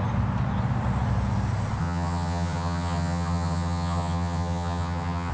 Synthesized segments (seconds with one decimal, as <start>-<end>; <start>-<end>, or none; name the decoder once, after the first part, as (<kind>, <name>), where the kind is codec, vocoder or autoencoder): 1.8-5.3 (vocoder, HiFi-GAN)